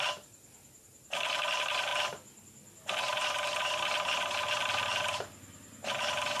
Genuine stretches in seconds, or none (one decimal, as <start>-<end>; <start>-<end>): 0.0-6.4